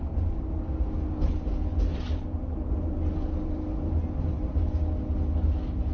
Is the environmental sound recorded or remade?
recorded